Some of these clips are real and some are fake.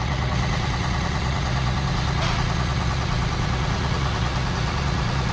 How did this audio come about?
fake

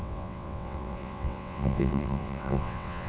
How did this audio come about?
fake